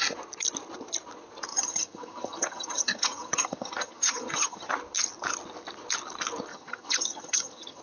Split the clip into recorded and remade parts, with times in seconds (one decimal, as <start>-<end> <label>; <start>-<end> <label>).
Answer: 0.0-1.5 recorded; 1.5-4.7 remade; 4.7-6.5 recorded; 6.5-7.8 remade